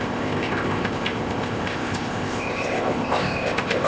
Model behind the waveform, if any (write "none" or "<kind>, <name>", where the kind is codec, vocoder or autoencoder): codec, ZipCodec